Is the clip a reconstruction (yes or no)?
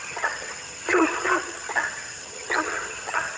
yes